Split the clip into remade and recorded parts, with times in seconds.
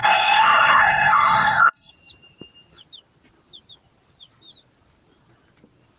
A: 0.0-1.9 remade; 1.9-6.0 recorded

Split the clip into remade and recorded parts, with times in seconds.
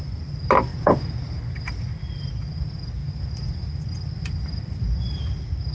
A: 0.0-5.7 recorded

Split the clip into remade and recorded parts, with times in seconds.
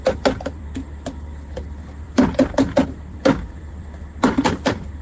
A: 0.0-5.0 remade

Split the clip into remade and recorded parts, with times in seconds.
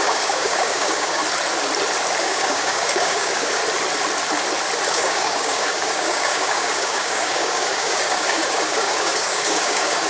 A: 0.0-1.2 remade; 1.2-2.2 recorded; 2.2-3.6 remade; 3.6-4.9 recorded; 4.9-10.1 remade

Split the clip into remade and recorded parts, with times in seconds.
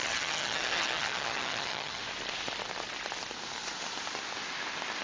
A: 0.0-2.0 remade; 2.0-5.0 recorded